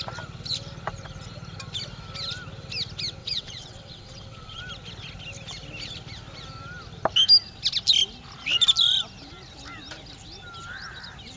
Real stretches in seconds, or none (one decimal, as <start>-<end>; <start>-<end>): 0.0-3.2; 4.6-11.4